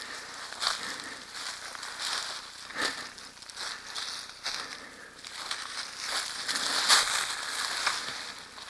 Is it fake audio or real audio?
real